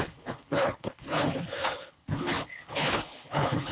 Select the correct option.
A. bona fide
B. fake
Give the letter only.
B